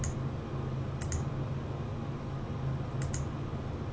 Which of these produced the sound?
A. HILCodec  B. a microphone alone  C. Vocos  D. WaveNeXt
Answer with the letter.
B